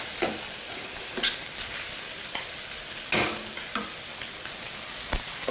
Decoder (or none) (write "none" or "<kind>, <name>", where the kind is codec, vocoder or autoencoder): none